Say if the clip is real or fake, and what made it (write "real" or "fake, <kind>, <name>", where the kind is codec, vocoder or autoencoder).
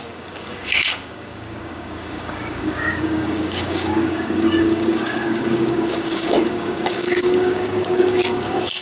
fake, codec, DAC